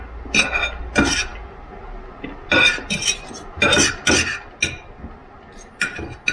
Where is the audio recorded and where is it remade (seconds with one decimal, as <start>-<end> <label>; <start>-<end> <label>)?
0.0-6.3 recorded